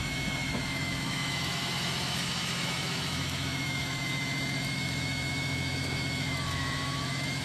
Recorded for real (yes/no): no